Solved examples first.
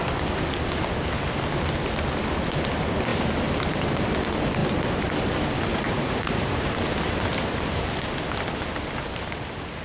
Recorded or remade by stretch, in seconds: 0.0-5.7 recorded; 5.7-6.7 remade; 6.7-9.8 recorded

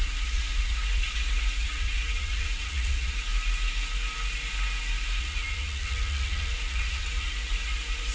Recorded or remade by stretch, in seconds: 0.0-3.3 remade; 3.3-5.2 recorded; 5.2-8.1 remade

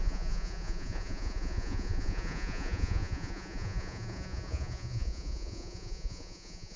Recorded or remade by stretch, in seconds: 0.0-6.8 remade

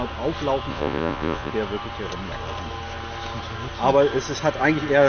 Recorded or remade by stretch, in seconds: 0.0-0.7 recorded; 0.7-1.5 remade; 1.5-5.1 recorded

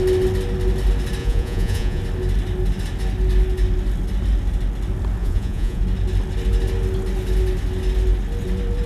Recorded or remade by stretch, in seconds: 0.0-1.2 recorded; 1.2-2.0 remade; 2.0-5.2 recorded; 5.2-5.8 remade; 5.8-8.9 recorded

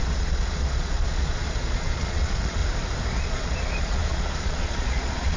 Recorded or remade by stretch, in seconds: 0.0-2.6 remade; 2.6-3.2 recorded; 3.2-5.4 remade

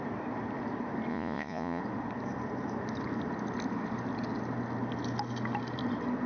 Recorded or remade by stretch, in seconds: 0.0-1.1 recorded; 1.1-1.8 remade; 1.8-6.3 recorded

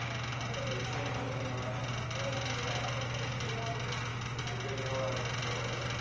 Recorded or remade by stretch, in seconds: 0.0-6.0 recorded